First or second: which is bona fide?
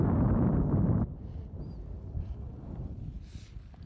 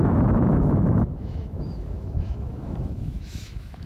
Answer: first